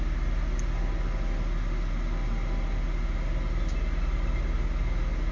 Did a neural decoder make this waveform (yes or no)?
no